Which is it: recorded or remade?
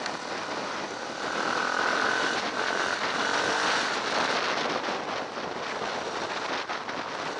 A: recorded